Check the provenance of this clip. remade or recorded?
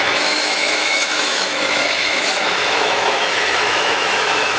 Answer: remade